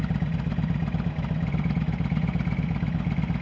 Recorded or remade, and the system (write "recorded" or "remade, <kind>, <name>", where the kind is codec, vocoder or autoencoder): recorded